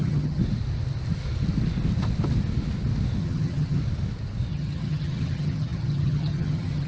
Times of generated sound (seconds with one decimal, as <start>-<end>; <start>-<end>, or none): 0.0-0.4; 3.2-3.8; 4.5-6.9